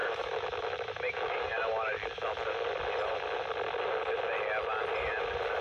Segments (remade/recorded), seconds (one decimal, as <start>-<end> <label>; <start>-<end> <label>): 0.0-2.0 remade; 2.0-5.6 recorded